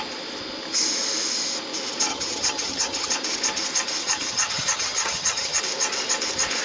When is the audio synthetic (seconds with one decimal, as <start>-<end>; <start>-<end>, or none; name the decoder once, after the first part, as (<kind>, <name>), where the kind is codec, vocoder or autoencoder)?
2.1-3.1 (vocoder, HiFi-GAN); 4.0-5.6